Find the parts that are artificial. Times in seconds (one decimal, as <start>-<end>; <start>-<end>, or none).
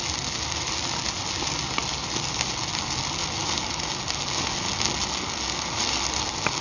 none